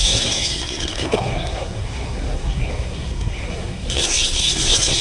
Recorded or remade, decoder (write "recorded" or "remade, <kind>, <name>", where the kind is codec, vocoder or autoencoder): remade, codec, SNAC